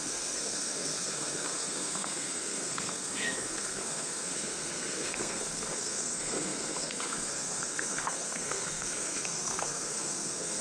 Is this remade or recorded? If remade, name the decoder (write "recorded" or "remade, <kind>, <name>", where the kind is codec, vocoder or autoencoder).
remade, codec, SNAC